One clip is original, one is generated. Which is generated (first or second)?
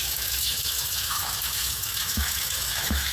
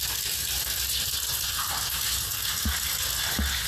first